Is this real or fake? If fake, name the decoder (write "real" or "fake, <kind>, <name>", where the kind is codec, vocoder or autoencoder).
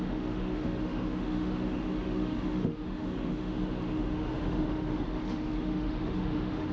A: fake, autoencoder, DAC-VAE